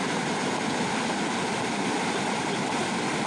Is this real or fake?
real